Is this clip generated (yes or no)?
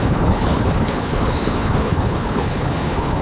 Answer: yes